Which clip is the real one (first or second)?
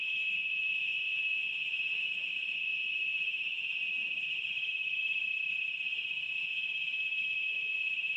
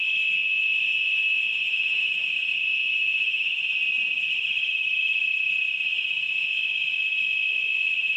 second